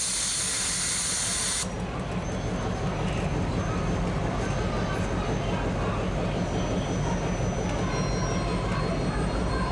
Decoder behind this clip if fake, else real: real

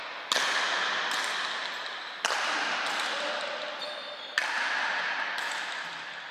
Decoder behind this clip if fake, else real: real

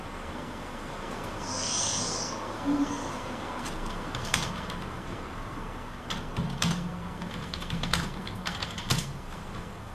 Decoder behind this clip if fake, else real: fake, codec, SNAC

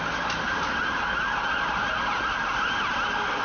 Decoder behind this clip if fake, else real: real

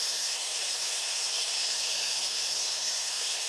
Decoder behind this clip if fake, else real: fake, codec, SNAC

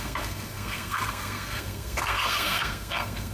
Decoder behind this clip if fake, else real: fake, codec, SNAC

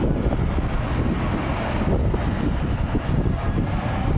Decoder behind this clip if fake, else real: real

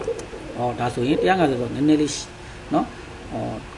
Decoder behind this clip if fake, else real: real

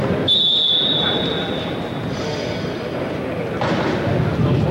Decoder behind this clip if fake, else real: real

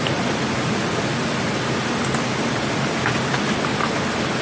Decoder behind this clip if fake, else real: real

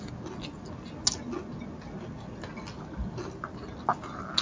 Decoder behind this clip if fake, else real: real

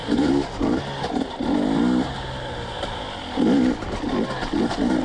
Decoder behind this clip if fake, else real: real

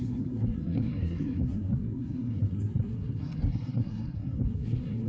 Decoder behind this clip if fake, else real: fake, codec, SNAC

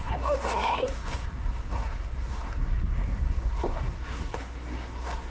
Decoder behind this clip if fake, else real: fake, codec, SNAC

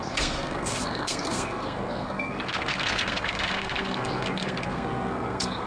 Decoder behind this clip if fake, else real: fake, codec, SNAC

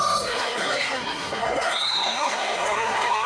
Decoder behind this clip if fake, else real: fake, codec, SNAC